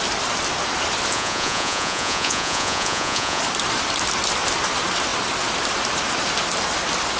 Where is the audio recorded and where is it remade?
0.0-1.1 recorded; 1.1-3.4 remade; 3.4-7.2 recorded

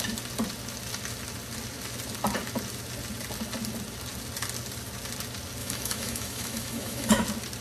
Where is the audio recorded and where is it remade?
0.0-5.6 recorded; 5.6-7.1 remade; 7.1-7.6 recorded